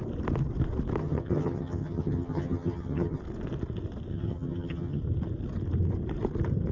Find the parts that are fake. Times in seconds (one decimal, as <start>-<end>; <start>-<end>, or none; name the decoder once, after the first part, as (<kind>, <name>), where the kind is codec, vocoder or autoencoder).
1.0-3.2 (vocoder, HiFi-GAN); 4.1-5.0

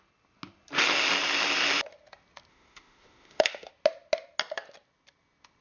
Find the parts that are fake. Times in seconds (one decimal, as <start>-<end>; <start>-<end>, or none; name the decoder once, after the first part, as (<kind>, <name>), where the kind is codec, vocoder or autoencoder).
2.5-3.7 (autoencoder, DAC-VAE)

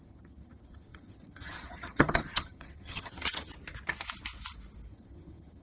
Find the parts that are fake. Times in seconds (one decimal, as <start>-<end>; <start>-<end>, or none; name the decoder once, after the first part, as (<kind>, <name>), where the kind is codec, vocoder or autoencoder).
0.0-3.5 (vocoder, HiFi-GAN); 4.9-5.6

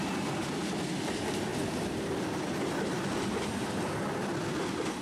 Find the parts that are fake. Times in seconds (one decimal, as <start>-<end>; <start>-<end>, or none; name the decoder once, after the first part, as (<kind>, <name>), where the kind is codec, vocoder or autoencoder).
none